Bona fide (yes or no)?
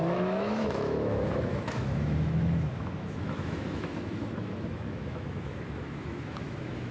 no